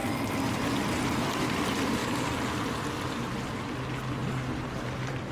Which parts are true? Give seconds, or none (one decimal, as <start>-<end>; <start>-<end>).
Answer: 1.3-2.0; 3.3-4.2